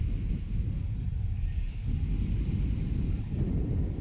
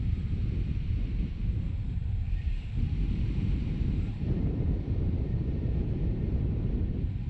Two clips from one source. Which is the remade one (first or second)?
second